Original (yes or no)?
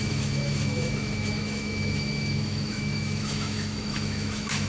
no